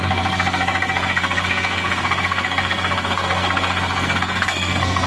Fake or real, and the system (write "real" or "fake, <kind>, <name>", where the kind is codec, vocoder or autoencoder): fake, codec, SNAC